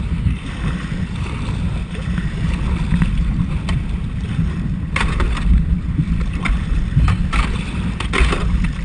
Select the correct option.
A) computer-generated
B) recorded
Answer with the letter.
B